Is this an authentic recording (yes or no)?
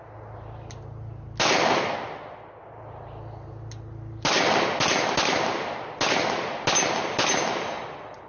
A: yes